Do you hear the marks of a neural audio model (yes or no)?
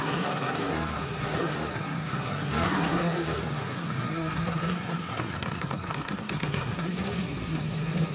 yes